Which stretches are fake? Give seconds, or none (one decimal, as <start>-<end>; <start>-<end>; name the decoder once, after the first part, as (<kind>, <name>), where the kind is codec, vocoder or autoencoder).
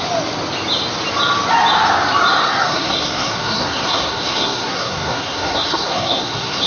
2.4-6.7 (codec, SNAC)